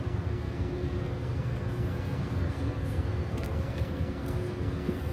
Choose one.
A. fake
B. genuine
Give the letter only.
A